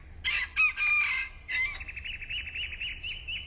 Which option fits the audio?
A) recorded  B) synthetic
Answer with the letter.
A